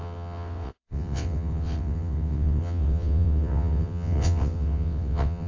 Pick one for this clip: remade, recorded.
remade